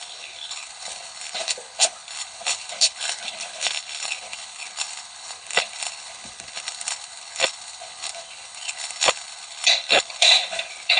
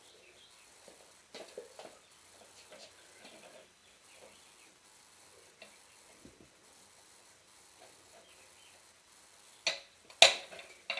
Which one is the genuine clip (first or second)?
second